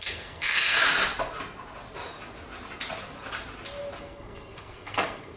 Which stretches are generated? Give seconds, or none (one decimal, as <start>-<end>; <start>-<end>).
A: 0.0-0.8; 4.0-5.4